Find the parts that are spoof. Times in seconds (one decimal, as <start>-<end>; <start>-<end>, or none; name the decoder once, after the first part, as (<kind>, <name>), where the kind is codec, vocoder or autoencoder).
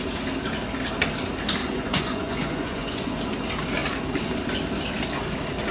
1.6-3.2 (vocoder, Vocos)